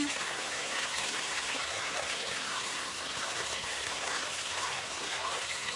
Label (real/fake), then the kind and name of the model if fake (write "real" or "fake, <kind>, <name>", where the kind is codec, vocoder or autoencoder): fake, codec, SNAC